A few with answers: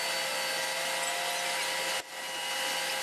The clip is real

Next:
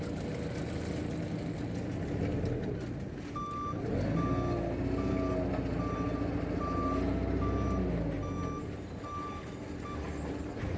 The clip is real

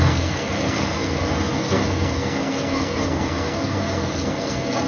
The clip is fake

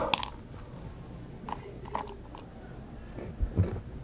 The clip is real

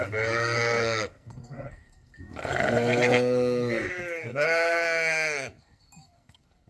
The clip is fake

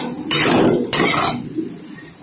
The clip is real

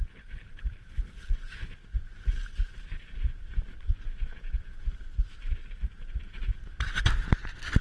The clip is real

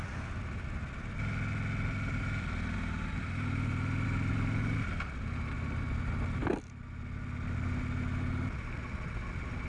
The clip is real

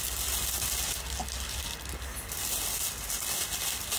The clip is real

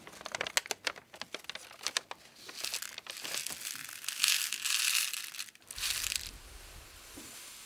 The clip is real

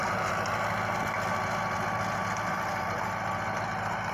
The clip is real